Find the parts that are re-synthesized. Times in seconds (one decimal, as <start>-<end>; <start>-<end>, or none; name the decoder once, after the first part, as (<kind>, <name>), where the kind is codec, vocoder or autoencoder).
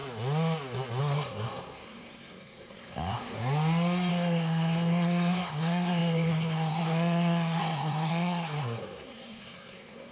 1.0-3.4 (codec, SNAC); 4.1-10.1